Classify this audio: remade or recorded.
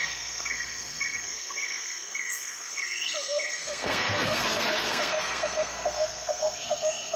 remade